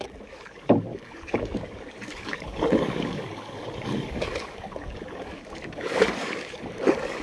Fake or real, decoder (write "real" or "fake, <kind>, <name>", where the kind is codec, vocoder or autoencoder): fake, codec, DAC